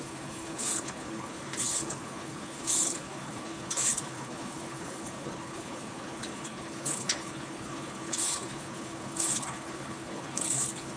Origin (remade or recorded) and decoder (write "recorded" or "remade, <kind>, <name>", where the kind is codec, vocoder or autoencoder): remade, codec, HILCodec